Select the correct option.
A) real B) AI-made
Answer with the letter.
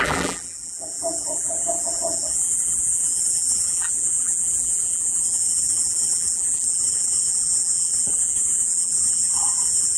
B